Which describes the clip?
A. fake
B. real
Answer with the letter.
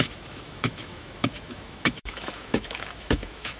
A